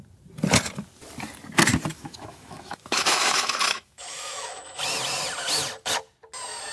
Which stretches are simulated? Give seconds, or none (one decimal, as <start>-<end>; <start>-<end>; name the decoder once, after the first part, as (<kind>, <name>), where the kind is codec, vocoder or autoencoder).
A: 1.9-4.8 (autoencoder, DAC-VAE)